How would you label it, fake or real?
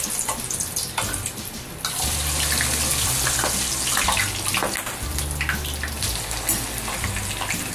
real